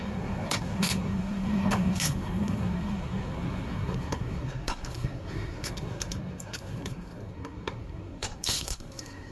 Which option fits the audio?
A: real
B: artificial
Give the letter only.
B